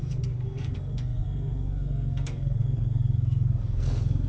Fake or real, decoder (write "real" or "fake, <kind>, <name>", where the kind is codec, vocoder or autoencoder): fake, codec, SNAC